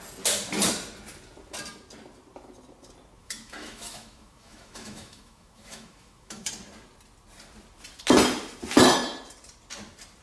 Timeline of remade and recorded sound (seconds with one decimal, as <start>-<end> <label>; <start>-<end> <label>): 0.0-3.2 recorded; 3.2-6.5 remade; 6.5-10.2 recorded